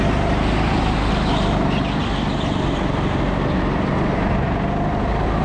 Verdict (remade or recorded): recorded